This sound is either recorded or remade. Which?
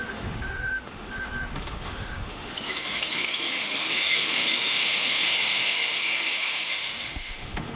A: remade